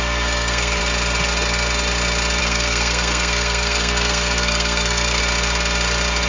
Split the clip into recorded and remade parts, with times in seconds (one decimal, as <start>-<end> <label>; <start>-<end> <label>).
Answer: 0.0-0.8 remade; 0.8-2.4 recorded; 2.4-5.2 remade; 5.2-6.3 recorded